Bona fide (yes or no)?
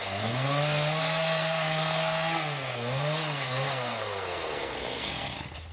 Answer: no